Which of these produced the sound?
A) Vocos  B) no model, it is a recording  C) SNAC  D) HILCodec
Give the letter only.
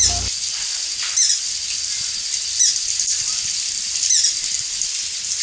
B